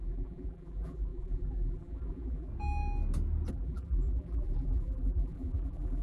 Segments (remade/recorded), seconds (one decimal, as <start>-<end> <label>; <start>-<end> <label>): 0.0-2.5 remade; 2.5-3.5 recorded; 3.5-6.0 remade